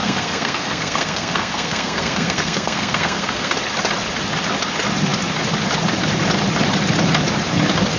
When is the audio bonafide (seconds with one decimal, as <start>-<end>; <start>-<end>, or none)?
3.5-8.0